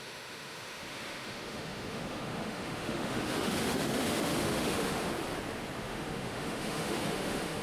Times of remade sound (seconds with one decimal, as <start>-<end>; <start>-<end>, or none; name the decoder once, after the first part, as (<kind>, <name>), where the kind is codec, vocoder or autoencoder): 0.0-5.1 (autoencoder, DAC-VAE); 5.8-7.6